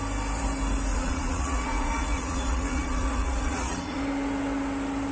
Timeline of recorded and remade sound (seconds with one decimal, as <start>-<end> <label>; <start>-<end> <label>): 0.0-0.9 recorded; 0.9-4.0 remade; 4.0-5.1 recorded